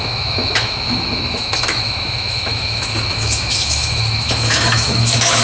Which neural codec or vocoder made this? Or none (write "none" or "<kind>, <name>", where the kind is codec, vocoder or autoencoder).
autoencoder, DAC-VAE